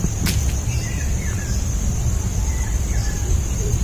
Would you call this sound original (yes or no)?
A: yes